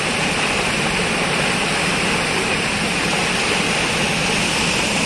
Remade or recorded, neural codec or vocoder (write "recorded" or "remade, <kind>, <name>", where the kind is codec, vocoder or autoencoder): recorded